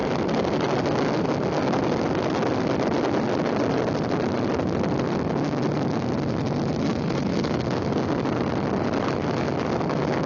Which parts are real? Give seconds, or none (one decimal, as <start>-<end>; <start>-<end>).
0.0-6.9; 7.6-10.3